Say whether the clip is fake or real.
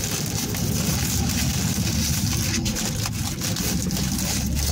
real